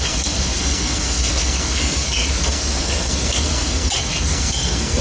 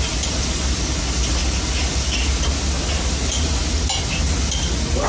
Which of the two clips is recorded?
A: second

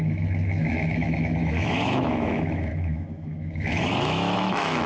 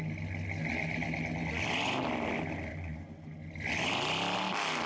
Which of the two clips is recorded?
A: second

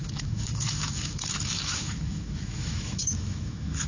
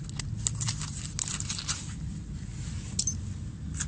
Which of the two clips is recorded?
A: second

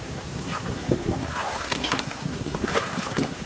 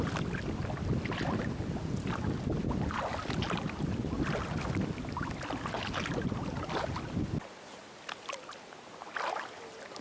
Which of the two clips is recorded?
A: second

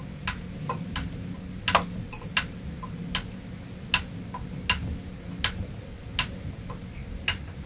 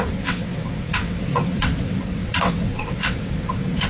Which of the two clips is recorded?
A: first